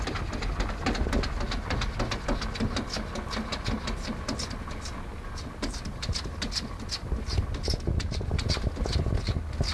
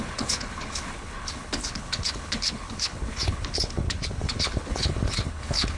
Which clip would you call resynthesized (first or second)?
second